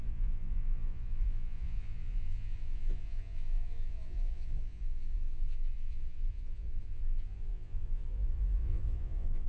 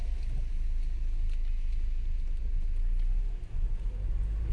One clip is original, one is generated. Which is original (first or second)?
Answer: second